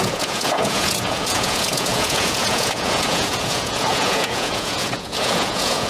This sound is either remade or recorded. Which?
remade